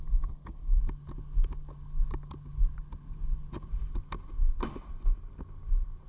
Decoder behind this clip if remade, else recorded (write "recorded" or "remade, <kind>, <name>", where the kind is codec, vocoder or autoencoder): recorded